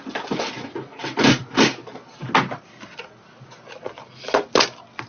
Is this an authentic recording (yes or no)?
yes